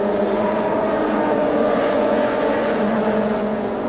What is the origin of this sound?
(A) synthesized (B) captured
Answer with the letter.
A